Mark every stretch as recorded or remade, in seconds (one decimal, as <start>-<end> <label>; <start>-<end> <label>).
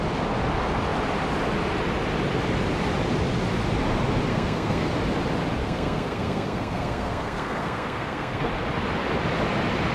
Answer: 0.0-4.3 recorded; 4.3-4.9 remade; 4.9-5.6 recorded; 5.6-8.5 remade; 8.5-9.9 recorded